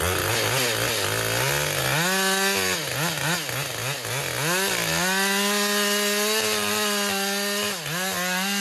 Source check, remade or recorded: recorded